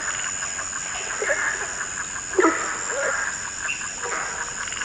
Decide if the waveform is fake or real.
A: real